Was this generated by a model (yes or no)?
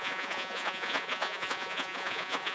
yes